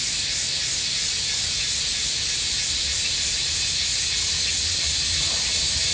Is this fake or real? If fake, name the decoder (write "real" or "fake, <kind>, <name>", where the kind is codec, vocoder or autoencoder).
real